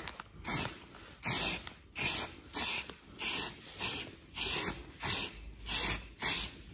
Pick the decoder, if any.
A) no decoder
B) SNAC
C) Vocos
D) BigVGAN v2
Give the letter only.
A